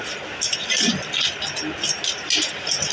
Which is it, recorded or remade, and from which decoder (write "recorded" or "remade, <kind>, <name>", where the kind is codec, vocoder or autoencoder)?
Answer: recorded